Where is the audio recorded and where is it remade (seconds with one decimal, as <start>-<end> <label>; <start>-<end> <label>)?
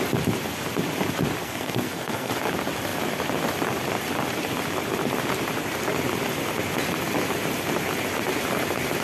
0.0-1.4 recorded; 1.4-2.3 remade; 2.3-9.0 recorded